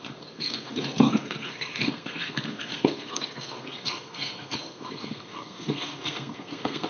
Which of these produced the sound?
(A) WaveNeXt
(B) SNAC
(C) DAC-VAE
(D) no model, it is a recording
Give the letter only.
B